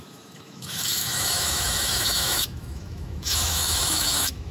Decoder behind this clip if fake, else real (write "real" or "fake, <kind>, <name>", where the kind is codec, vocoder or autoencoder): fake, autoencoder, DAC-VAE